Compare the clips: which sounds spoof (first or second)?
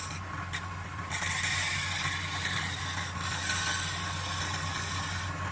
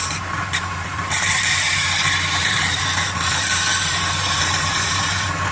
second